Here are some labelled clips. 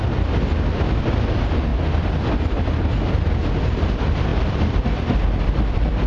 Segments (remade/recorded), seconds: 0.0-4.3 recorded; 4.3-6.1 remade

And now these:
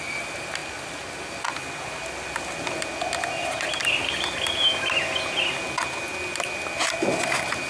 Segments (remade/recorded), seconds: 0.0-7.7 recorded

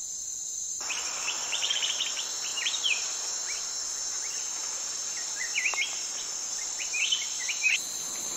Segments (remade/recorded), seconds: 0.0-0.4 recorded; 0.4-2.0 remade; 2.0-2.5 recorded; 2.5-3.3 remade; 3.3-4.6 recorded; 4.6-8.4 remade

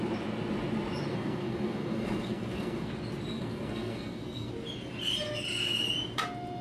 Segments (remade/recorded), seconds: 0.0-1.1 recorded; 1.1-2.9 remade; 2.9-3.3 recorded; 3.3-4.5 remade; 4.5-6.6 recorded